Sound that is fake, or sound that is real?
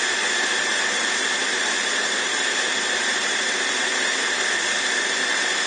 fake